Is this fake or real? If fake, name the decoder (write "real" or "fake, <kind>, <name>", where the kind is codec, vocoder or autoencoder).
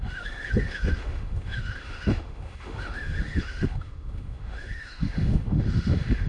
fake, autoencoder, DAC-VAE